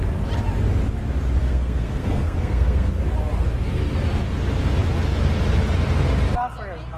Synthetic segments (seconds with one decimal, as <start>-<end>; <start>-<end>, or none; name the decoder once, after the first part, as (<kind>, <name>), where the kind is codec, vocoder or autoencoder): 1.4-2.9 (codec, SNAC)